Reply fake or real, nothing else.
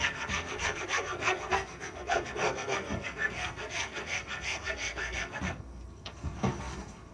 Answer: fake